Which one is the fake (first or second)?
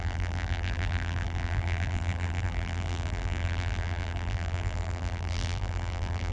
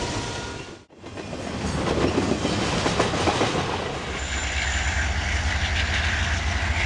first